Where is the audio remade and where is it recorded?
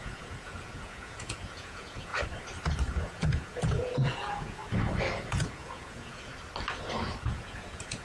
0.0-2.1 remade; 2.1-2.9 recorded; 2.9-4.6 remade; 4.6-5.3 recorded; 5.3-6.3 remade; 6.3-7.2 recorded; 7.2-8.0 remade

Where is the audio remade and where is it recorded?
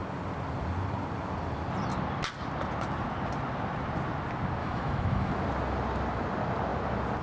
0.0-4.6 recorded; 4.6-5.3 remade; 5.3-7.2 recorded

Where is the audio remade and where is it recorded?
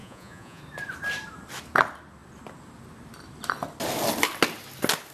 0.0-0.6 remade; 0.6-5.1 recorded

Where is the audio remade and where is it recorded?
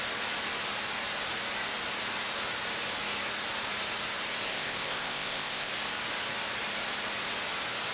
0.0-4.5 recorded; 4.5-5.7 remade; 5.7-7.9 recorded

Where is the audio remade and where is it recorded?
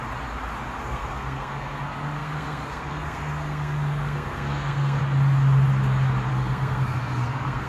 0.0-0.8 recorded; 0.8-5.0 remade; 5.0-6.3 recorded; 6.3-7.7 remade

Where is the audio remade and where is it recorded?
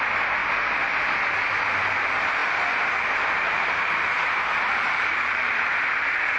0.0-6.4 recorded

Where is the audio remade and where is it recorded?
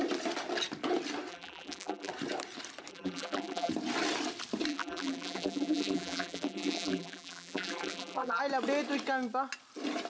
0.0-1.3 recorded; 1.3-2.1 remade; 2.1-2.9 recorded; 2.9-3.7 remade; 3.7-4.7 recorded; 4.7-8.4 remade; 8.4-10.1 recorded